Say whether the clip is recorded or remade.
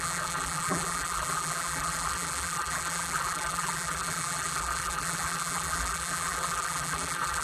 remade